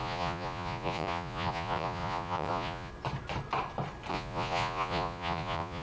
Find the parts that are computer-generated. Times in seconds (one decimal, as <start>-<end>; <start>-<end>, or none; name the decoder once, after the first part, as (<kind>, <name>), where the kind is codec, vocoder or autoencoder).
0.0-2.9 (vocoder, Vocos); 4.1-5.8